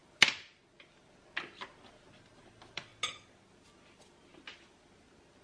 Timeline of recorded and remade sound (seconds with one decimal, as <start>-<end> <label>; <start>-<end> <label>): 0.0-2.3 recorded; 2.3-2.9 remade; 2.9-5.4 recorded